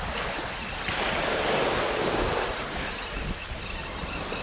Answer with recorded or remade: recorded